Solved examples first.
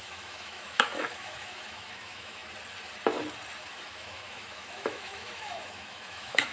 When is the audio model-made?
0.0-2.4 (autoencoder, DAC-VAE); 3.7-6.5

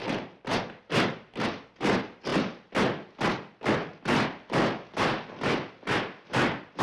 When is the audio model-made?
none

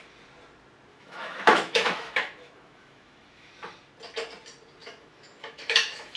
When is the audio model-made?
0.9-3.5 (autoencoder, DAC-VAE); 4.8-6.2

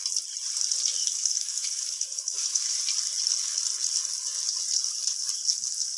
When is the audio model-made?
1.0-2.8 (autoencoder, DAC-VAE)

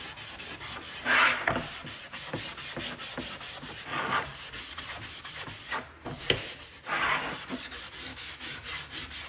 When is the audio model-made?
8.1-8.6 (autoencoder, DAC-VAE)

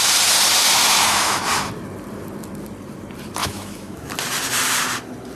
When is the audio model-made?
0.9-1.4 (autoencoder, DAC-VAE); 3.4-4.1